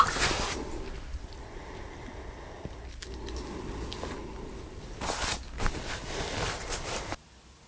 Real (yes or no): yes